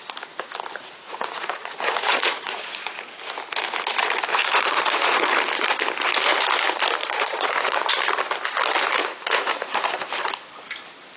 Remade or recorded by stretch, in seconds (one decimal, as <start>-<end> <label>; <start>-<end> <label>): 0.0-0.8 recorded; 0.8-3.1 remade; 3.1-4.3 recorded; 4.3-5.5 remade; 5.5-7.0 recorded; 7.0-7.9 remade; 7.9-9.0 recorded; 9.0-9.9 remade; 9.9-11.2 recorded